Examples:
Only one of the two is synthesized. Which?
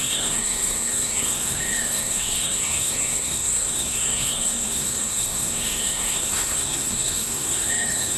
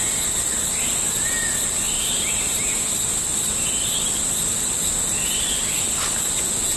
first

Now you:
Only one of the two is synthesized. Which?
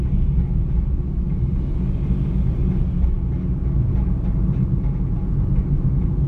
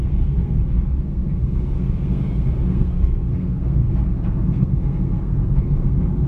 second